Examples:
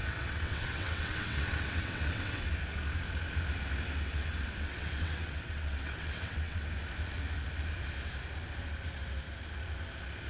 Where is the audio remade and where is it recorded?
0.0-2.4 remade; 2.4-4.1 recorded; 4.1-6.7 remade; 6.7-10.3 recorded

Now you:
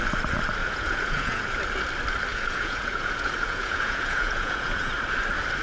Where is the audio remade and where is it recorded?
0.0-0.6 recorded; 0.6-1.4 remade; 1.4-2.3 recorded; 2.3-4.9 remade; 4.9-5.6 recorded

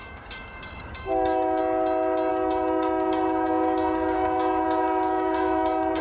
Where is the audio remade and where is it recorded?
0.0-1.6 remade; 1.6-2.3 recorded; 2.3-6.0 remade

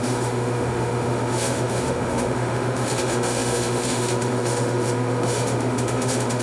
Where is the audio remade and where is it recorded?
0.0-6.4 remade

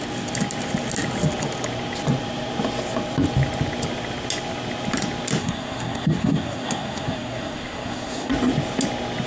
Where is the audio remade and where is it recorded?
0.0-5.4 recorded; 5.4-8.3 remade; 8.3-9.3 recorded